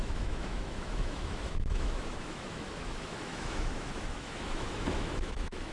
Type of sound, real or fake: fake